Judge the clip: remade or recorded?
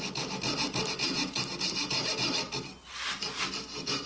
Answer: recorded